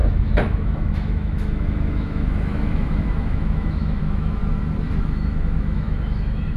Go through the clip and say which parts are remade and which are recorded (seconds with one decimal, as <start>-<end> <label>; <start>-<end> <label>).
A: 0.0-4.4 remade; 4.4-5.0 recorded; 5.0-6.6 remade